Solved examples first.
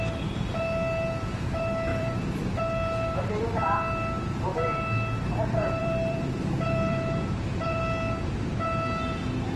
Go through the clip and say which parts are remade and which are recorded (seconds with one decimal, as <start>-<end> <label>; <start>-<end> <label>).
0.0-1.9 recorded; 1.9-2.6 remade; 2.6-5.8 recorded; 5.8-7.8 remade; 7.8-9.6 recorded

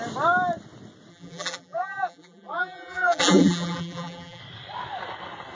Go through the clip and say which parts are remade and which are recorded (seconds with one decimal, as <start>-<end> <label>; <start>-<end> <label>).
0.0-1.1 recorded; 1.1-4.4 remade; 4.4-5.5 recorded

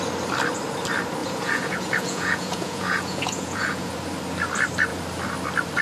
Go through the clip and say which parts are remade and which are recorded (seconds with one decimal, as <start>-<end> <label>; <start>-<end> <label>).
0.0-1.2 recorded; 1.2-3.9 remade; 3.9-5.8 recorded

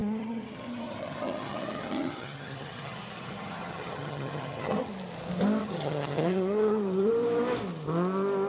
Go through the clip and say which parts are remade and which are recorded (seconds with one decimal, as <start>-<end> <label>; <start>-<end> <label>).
0.0-4.9 remade; 4.9-5.6 recorded; 5.6-7.1 remade; 7.1-8.5 recorded

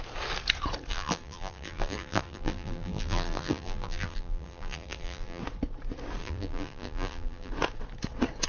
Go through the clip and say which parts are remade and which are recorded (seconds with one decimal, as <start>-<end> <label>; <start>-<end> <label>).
0.0-0.9 recorded; 0.9-5.4 remade; 5.4-6.2 recorded; 6.2-7.5 remade; 7.5-8.5 recorded